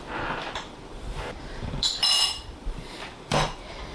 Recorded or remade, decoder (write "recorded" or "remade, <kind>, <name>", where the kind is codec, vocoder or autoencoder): remade, vocoder, BigVGAN v2